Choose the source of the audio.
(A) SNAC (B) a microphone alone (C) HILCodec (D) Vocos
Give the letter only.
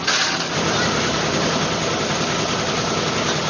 B